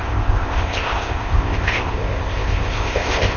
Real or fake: fake